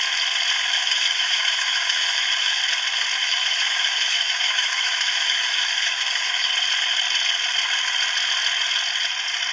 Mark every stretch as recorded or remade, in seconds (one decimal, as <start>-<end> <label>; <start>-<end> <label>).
0.0-0.8 recorded; 0.8-2.6 remade; 2.6-3.2 recorded; 3.2-6.5 remade; 6.5-9.5 recorded